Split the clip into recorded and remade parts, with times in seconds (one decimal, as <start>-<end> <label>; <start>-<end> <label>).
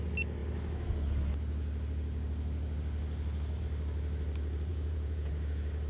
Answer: 0.0-4.7 recorded; 4.7-5.3 remade; 5.3-5.9 recorded